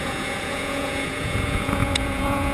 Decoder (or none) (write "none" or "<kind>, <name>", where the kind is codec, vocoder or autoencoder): vocoder, Vocos